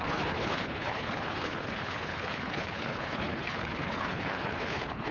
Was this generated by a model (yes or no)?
yes